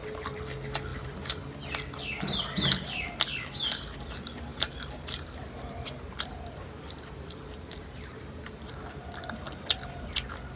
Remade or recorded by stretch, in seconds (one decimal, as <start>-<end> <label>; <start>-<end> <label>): 0.0-0.9 recorded; 0.9-1.4 remade; 1.4-4.5 recorded; 4.5-8.9 remade; 8.9-10.6 recorded